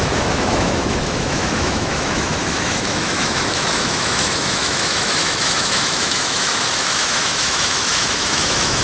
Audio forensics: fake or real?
fake